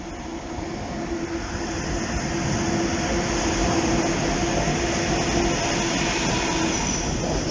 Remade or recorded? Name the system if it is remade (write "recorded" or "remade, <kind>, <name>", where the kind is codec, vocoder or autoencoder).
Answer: recorded